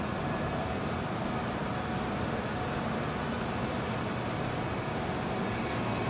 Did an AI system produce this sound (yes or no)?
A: no